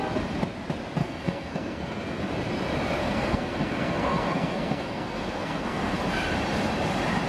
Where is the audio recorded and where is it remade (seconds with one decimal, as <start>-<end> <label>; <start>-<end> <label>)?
0.0-1.0 recorded; 1.0-2.2 remade; 2.2-3.0 recorded; 3.0-6.0 remade; 6.0-7.3 recorded